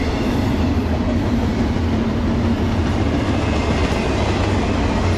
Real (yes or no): yes